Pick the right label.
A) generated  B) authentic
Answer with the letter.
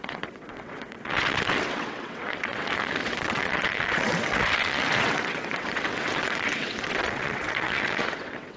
A